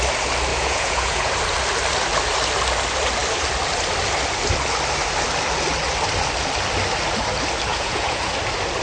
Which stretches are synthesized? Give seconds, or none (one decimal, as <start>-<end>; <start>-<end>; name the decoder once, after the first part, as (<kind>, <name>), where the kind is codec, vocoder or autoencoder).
0.5-1.3 (vocoder, Vocos); 7.7-8.3